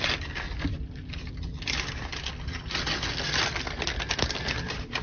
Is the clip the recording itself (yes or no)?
yes